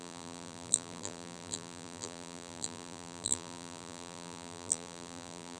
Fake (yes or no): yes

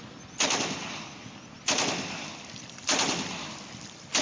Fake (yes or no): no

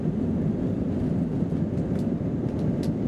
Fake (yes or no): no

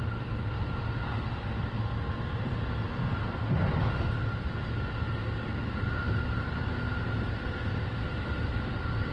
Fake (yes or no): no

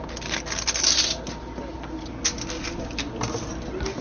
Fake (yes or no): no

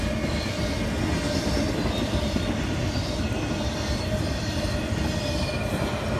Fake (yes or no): no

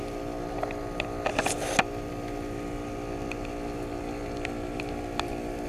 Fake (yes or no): no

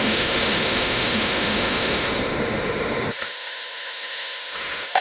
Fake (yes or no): yes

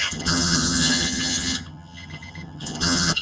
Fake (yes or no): yes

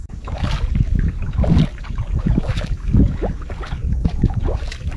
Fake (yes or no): yes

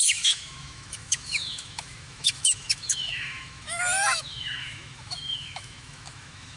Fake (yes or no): yes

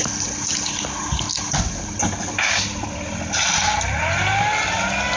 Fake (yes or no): no